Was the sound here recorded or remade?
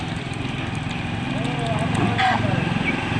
recorded